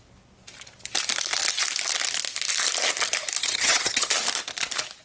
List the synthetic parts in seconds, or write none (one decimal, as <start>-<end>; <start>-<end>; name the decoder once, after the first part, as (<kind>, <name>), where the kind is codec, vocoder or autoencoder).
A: 3.4-4.1 (vocoder, HiFi-GAN)